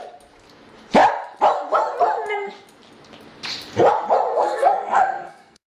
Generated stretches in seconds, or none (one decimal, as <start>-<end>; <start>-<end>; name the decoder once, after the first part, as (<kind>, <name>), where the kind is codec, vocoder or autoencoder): 4.3-5.7 (codec, SNAC)